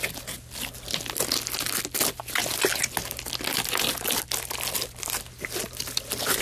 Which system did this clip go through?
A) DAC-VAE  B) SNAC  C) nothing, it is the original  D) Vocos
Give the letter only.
C